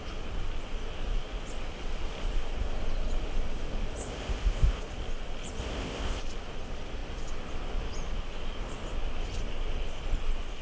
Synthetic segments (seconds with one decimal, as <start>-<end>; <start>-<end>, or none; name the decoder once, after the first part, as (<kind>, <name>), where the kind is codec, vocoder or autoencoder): 4.0-4.8 (codec, ZipCodec); 5.6-6.2